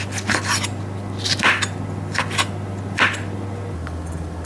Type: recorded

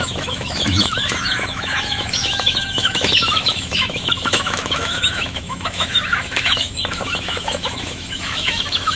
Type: remade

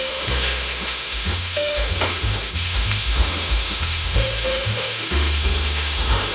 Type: remade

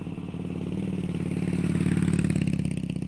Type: recorded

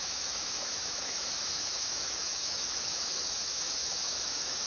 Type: remade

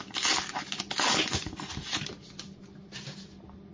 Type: recorded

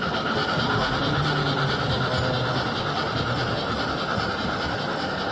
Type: recorded